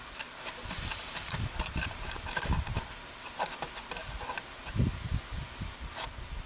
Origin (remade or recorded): recorded